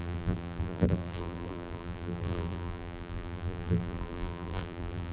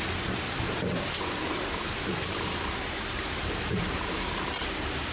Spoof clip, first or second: first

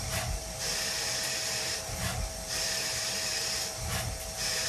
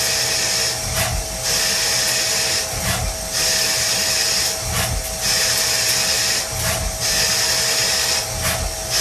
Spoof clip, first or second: first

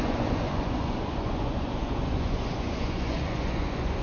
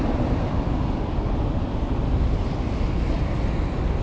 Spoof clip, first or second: first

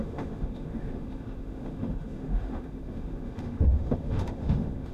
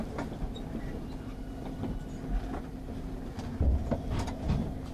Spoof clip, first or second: first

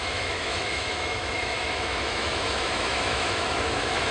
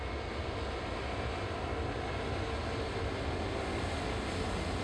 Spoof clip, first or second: first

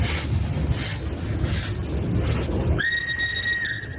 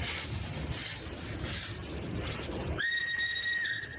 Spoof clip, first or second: second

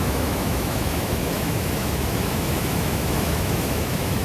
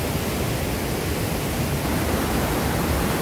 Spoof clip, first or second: first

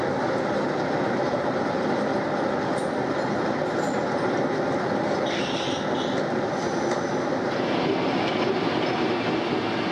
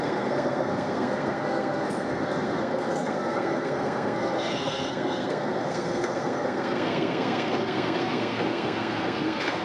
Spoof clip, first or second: second